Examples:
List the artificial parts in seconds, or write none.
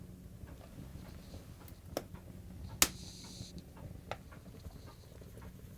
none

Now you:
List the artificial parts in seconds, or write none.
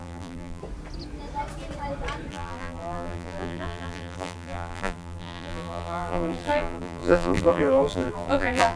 0.0-0.6 (vocoder, BigVGAN v2); 2.3-8.8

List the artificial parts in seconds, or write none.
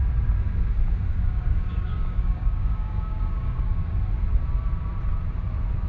1.1-3.9 (codec, DAC)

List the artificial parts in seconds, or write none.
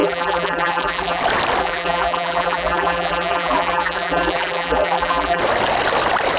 0.0-1.2 (vocoder, BigVGAN v2); 1.6-5.4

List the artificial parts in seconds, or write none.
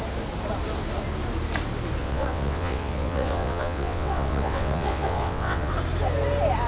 2.0-5.7 (vocoder, WaveNeXt)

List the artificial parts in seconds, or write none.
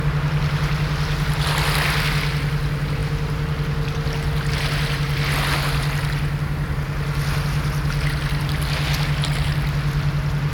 none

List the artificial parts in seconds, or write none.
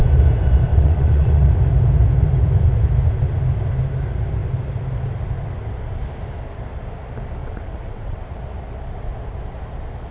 0.7-1.5 (vocoder, WaveNeXt); 7.4-8.2